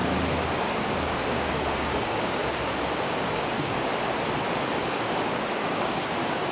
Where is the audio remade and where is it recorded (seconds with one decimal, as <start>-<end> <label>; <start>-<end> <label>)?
0.0-0.6 recorded; 0.6-2.4 remade; 2.4-3.0 recorded; 3.0-3.9 remade; 3.9-4.8 recorded; 4.8-6.5 remade